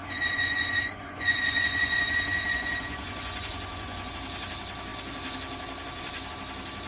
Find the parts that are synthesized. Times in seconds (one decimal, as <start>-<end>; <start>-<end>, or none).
0.0-4.1